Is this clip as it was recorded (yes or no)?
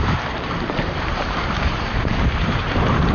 no